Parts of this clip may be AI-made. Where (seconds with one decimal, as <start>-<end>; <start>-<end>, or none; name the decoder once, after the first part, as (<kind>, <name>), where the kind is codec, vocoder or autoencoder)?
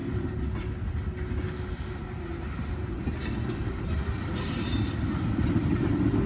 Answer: 2.8-5.1 (vocoder, BigVGAN v2)